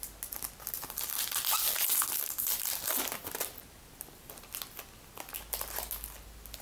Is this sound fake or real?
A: real